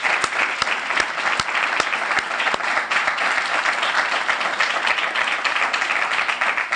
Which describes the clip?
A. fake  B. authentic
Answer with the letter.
B